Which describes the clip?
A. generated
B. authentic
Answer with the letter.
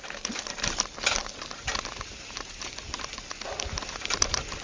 B